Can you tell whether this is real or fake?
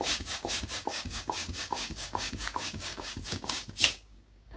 fake